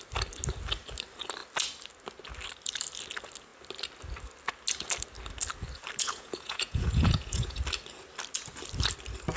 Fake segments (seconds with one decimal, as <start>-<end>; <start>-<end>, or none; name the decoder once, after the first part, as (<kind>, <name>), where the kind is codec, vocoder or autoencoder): 6.0-7.6 (vocoder, Vocos)